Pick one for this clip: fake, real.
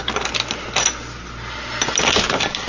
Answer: real